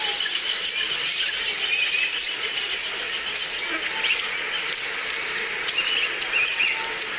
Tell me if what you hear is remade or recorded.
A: recorded